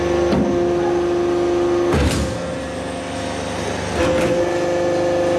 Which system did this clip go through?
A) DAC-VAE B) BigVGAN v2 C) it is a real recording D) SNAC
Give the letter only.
C